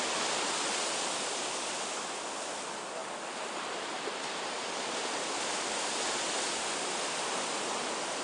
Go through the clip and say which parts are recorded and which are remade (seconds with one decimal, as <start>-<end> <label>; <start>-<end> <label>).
0.0-8.2 recorded